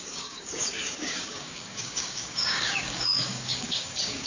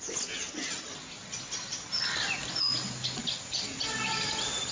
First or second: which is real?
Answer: second